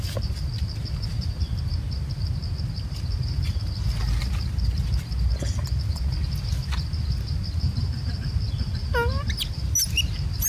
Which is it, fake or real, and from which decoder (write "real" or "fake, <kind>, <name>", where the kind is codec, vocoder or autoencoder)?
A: real